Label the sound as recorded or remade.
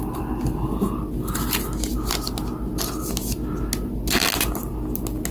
recorded